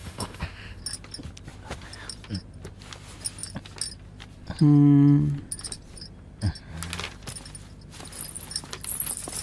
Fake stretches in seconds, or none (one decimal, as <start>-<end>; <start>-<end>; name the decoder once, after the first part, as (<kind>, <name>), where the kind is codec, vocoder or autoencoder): 0.0-0.8 (autoencoder, DAC-VAE)